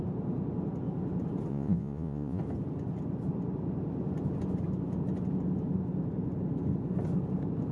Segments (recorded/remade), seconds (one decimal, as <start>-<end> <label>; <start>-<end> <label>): 0.0-1.5 recorded; 1.5-2.4 remade; 2.4-7.7 recorded

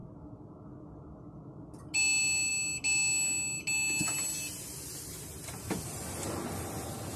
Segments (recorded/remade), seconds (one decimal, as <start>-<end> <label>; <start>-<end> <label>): 0.0-7.2 recorded

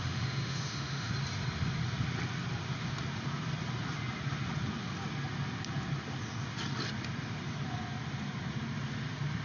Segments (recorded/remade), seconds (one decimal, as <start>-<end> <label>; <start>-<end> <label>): 0.0-1.1 remade; 1.1-9.4 recorded